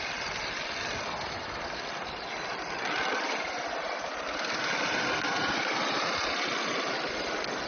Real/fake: real